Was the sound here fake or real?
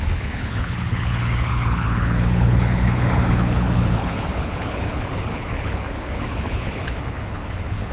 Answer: fake